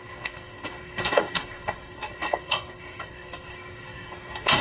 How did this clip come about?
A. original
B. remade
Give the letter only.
B